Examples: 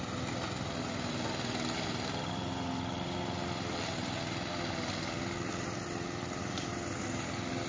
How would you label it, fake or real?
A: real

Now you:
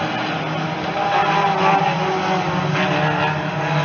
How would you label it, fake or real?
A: real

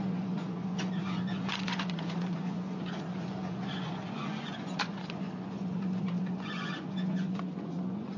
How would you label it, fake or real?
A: fake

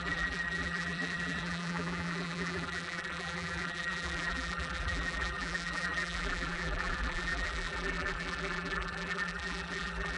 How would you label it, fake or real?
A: fake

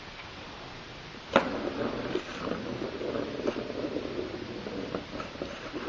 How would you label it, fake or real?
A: real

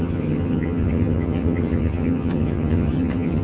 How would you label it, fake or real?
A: fake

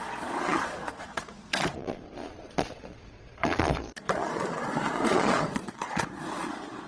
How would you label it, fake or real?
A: fake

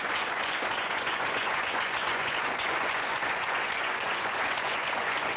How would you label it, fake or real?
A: fake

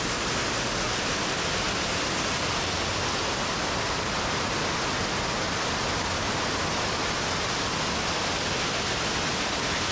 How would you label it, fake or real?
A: real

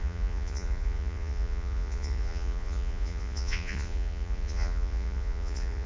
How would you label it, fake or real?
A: fake